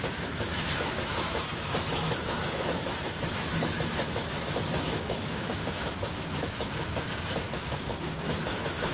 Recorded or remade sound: remade